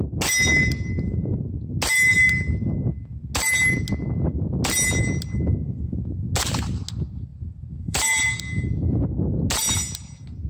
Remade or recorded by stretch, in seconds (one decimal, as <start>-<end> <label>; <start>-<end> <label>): 0.0-7.3 recorded; 7.3-8.2 remade; 8.2-10.5 recorded